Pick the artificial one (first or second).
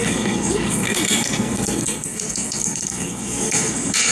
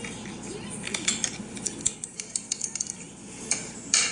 first